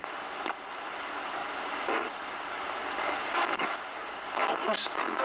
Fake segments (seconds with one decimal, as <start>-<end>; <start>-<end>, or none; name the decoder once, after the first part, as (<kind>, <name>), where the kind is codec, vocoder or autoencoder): none